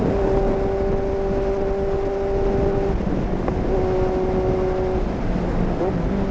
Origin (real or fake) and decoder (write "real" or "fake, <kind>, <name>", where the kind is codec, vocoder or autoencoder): real